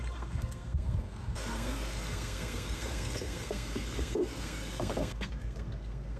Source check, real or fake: fake